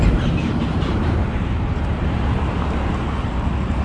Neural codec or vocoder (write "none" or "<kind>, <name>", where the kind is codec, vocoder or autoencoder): vocoder, BigVGAN v2